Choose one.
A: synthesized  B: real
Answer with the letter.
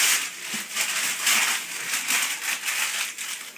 B